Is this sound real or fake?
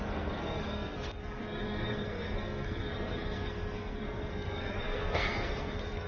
fake